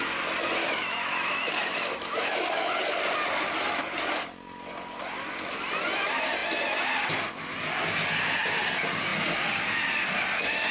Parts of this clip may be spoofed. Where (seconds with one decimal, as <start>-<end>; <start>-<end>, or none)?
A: 0.6-2.8